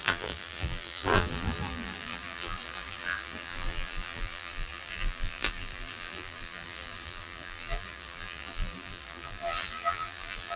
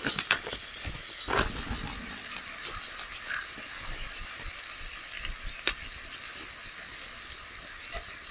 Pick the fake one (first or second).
first